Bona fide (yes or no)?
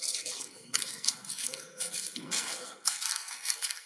no